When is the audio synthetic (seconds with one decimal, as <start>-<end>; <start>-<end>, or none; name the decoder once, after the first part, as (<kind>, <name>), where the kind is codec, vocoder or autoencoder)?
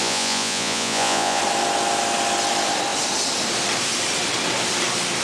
0.0-1.4 (vocoder, Vocos)